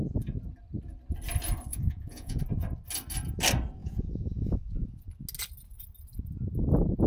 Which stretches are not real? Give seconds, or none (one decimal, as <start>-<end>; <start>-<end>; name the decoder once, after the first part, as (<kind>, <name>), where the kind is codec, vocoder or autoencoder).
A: 1.7-2.4 (vocoder, Vocos); 3.8-5.1